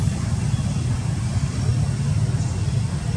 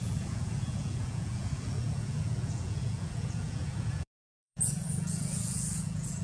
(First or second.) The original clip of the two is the first